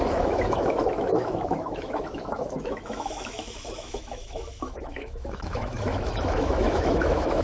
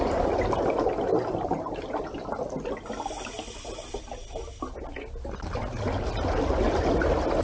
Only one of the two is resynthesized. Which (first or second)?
first